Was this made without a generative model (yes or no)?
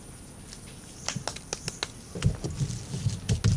yes